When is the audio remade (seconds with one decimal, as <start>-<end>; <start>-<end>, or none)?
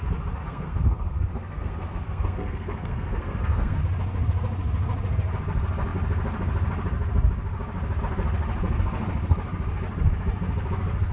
0.4-3.8